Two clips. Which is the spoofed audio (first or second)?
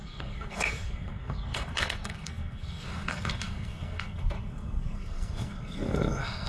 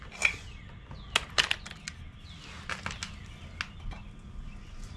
first